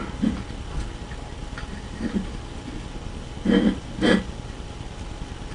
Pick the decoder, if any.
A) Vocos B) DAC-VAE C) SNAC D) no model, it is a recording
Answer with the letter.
D